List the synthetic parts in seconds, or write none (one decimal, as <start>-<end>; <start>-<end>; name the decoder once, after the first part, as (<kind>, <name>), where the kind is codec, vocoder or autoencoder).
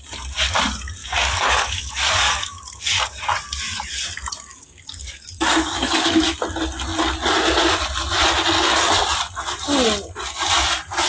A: 1.0-3.0 (codec, DAC); 4.5-6.1